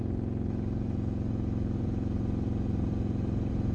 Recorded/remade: recorded